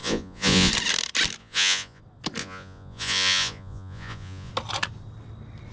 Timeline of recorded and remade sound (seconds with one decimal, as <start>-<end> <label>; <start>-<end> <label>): 0.0-0.7 remade; 0.7-1.4 recorded; 1.4-2.0 remade; 2.0-2.4 recorded; 2.4-4.5 remade; 4.5-5.7 recorded